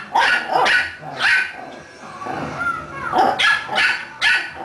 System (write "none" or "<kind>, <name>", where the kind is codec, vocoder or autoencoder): none